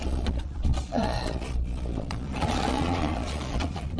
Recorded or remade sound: remade